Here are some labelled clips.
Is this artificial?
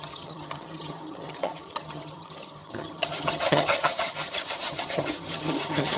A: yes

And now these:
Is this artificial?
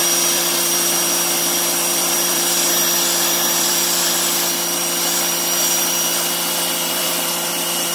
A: yes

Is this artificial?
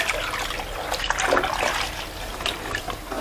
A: no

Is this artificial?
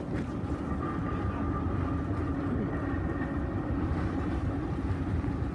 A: no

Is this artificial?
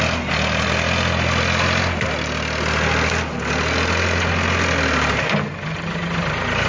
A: no